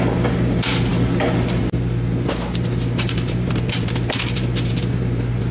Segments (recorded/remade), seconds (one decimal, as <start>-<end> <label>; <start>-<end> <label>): 0.0-5.5 recorded